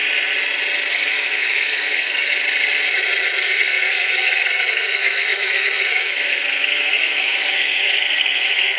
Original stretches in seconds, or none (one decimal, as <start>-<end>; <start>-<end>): 0.0-0.9; 2.3-3.4